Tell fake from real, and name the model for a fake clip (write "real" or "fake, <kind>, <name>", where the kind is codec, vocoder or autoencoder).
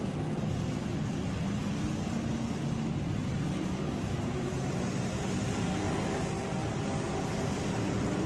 real